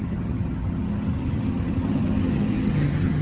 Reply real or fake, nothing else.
fake